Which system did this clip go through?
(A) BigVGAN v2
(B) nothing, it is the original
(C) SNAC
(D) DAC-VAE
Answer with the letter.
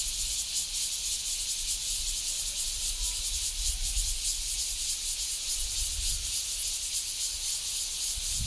B